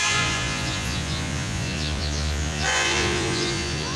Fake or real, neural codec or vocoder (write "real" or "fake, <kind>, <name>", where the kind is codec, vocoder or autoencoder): fake, vocoder, Vocos